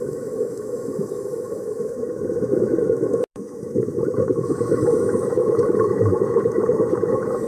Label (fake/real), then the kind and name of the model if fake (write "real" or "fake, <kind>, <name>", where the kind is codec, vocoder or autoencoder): fake, autoencoder, DAC-VAE